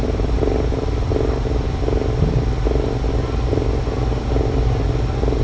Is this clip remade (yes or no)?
no